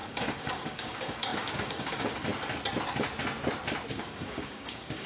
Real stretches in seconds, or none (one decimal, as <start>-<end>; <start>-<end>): 2.3-3.9